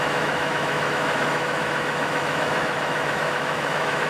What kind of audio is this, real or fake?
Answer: fake